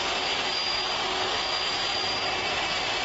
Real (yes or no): yes